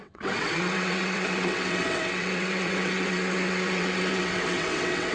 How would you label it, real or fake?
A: fake